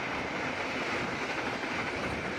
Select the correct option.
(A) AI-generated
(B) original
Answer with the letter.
B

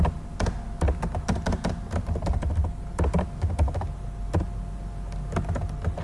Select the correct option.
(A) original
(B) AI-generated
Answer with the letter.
A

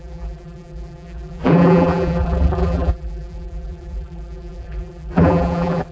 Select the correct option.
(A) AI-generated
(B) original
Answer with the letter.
A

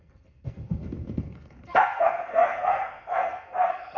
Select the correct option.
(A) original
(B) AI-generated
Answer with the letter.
B